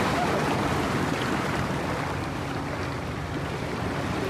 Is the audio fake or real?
fake